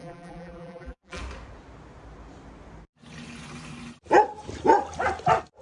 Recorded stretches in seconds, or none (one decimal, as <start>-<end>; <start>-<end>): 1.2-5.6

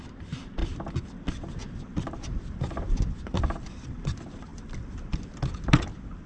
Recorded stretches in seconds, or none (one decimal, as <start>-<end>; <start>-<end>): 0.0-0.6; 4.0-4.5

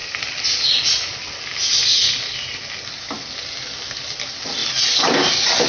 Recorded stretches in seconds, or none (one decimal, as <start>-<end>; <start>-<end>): 0.8-4.6; 5.3-5.7

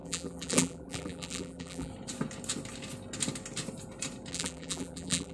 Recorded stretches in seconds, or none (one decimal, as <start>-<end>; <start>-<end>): 1.9-4.3

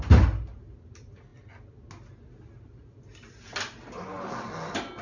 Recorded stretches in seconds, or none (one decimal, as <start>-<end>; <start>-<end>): 0.0-5.0